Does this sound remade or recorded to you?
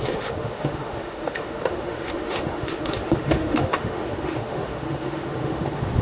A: remade